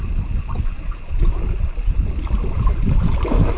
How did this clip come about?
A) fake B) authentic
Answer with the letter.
B